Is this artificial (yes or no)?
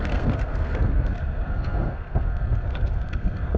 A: yes